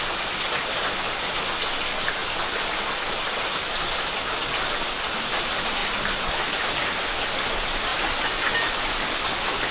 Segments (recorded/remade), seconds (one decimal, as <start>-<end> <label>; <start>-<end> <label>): 0.0-7.9 recorded; 7.9-8.5 remade; 8.5-9.7 recorded